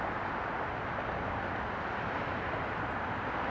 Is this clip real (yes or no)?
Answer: yes